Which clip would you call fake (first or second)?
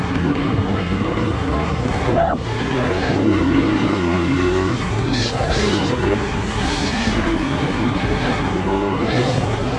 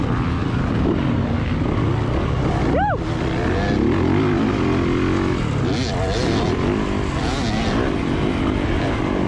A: first